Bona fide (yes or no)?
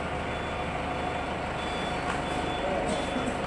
yes